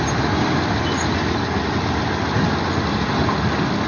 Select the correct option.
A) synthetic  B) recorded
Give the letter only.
B